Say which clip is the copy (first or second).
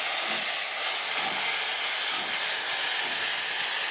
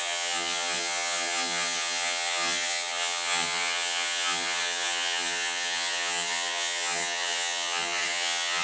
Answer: second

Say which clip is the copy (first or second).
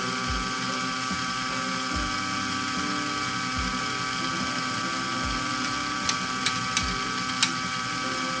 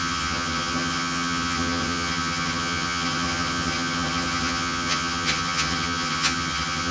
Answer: second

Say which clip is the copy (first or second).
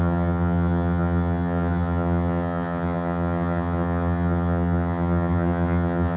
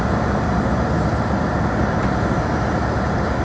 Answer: first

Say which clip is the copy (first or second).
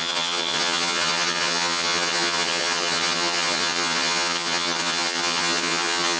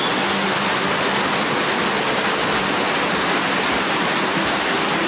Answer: first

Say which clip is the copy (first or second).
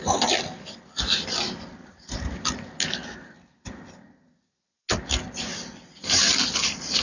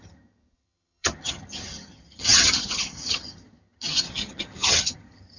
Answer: second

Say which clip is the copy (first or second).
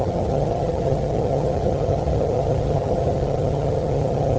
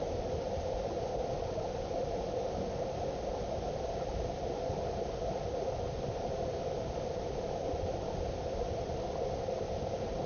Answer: first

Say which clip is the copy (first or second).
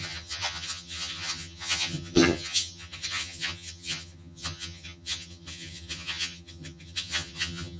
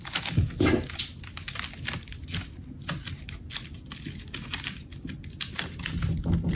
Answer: first